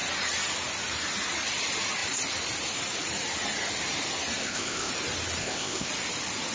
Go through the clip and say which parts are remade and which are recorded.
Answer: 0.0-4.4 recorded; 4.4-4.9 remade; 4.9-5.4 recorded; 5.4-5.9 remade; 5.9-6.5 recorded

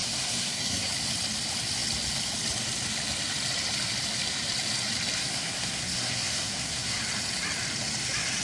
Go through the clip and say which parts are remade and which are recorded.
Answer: 0.0-0.9 remade; 0.9-5.2 recorded; 5.2-7.0 remade; 7.0-8.4 recorded

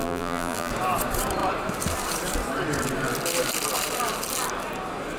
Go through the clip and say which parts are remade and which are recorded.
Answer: 0.0-0.7 remade; 0.7-5.2 recorded

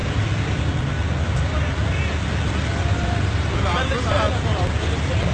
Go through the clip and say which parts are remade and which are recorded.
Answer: 0.0-5.3 recorded

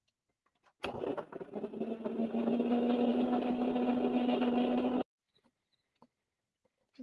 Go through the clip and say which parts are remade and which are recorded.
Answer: 0.0-3.1 recorded; 3.1-3.7 remade; 3.7-7.0 recorded